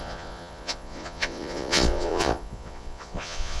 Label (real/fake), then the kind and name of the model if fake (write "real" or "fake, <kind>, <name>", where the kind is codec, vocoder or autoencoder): fake, vocoder, Vocos